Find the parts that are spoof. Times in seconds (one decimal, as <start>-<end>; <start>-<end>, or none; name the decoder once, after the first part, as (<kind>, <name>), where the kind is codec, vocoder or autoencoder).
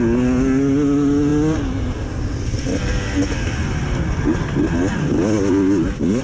none